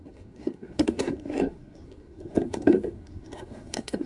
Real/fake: fake